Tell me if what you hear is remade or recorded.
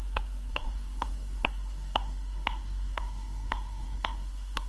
remade